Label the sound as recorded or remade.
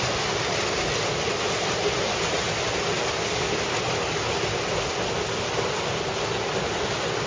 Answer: recorded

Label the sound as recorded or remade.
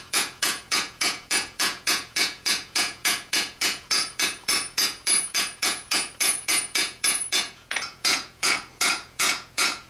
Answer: remade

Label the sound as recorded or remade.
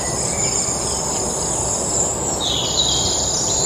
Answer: recorded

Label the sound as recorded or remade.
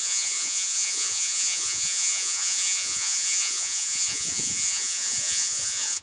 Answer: remade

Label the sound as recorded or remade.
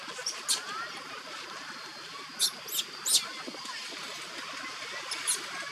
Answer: recorded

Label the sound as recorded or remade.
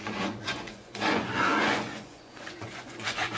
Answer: remade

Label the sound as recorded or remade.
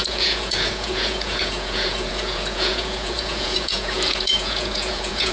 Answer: remade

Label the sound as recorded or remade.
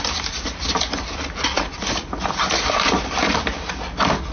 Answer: recorded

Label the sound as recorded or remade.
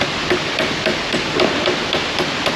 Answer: recorded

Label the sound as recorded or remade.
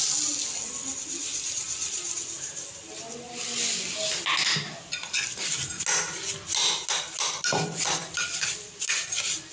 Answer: recorded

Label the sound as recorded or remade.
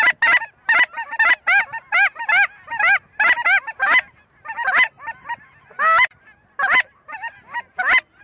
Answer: recorded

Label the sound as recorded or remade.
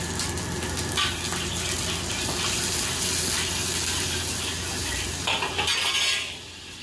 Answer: recorded